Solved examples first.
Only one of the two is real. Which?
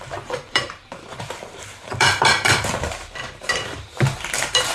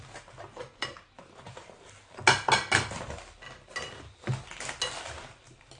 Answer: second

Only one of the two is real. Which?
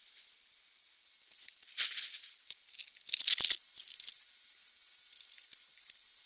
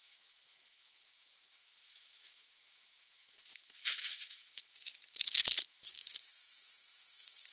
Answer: first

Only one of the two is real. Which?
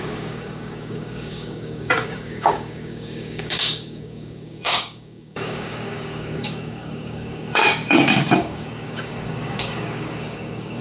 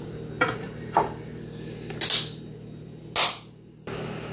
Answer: second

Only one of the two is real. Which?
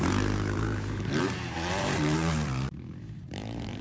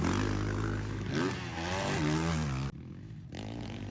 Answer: second